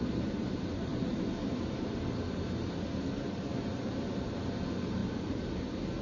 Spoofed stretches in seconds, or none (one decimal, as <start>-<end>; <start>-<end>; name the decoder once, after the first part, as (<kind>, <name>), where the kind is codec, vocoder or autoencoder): 0.0-5.0 (vocoder, BigVGAN v2)